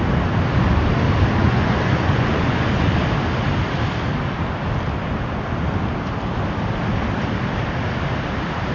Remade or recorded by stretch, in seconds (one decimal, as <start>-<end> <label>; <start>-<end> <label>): 0.0-1.4 recorded; 1.4-2.7 remade; 2.7-8.7 recorded